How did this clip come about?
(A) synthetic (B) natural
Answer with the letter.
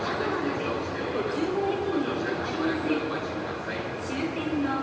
B